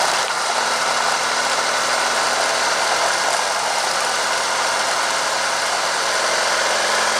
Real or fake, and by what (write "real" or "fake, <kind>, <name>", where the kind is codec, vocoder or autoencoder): real